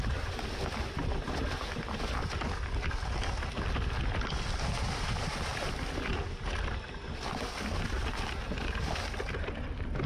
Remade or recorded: recorded